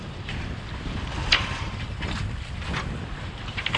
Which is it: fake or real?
real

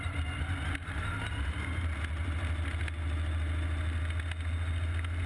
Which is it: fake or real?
real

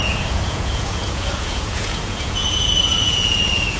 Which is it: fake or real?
fake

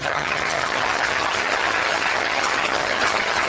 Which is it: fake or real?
fake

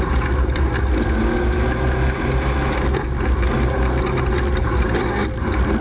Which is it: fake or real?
real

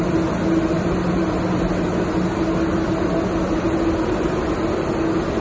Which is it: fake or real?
real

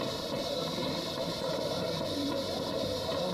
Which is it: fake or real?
fake